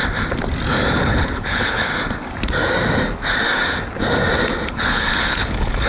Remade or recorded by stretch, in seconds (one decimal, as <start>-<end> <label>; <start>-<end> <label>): 0.0-1.0 recorded; 1.0-1.9 remade; 1.9-4.7 recorded; 4.7-5.9 remade